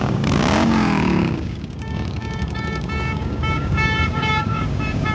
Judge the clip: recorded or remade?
remade